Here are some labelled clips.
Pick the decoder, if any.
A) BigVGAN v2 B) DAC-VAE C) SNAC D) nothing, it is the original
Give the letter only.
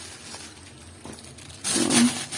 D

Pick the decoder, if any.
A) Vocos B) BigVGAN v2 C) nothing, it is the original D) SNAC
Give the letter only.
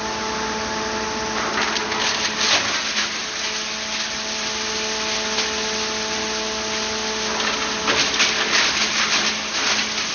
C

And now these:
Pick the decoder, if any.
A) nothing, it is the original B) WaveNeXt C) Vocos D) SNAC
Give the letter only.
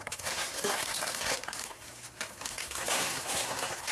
D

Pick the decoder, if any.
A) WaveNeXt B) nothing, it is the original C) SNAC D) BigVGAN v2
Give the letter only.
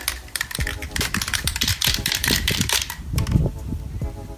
B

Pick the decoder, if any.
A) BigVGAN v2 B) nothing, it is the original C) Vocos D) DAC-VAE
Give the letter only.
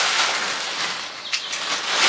B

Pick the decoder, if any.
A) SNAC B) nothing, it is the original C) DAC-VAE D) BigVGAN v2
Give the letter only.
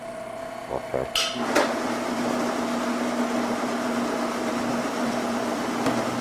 B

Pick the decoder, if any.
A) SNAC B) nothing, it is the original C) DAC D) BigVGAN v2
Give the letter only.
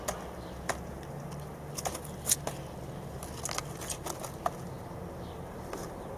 B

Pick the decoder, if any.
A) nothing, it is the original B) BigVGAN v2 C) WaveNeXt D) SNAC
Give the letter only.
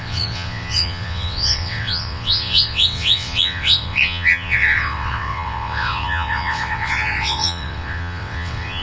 C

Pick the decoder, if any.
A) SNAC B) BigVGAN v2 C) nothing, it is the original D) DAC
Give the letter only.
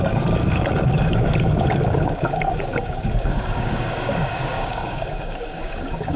D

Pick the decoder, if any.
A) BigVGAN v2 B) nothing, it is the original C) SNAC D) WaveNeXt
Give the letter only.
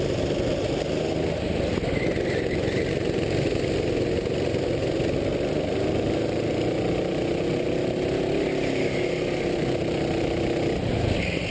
B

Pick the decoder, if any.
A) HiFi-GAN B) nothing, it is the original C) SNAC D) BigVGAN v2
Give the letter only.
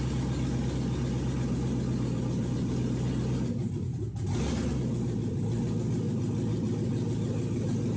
B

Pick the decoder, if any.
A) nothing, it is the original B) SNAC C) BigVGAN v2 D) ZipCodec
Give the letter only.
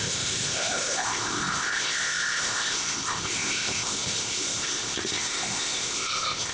D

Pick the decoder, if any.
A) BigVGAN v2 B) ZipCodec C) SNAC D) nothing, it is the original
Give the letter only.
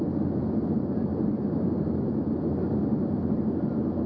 A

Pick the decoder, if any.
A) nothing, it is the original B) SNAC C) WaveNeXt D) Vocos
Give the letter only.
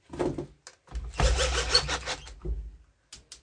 A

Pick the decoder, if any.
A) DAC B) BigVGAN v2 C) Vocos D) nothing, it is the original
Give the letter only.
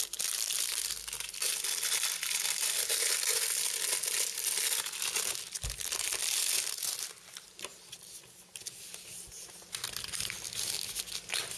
D